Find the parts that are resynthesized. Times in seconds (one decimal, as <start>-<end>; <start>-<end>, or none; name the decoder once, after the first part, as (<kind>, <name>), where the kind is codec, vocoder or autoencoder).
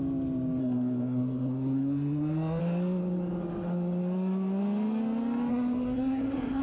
0.6-2.6 (codec, SNAC); 5.5-6.6